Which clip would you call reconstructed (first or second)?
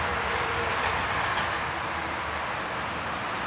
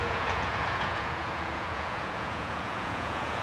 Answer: second